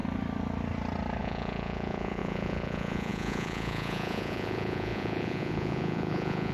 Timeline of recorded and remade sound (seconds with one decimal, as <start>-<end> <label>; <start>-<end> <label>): 0.0-1.2 recorded; 1.2-6.5 remade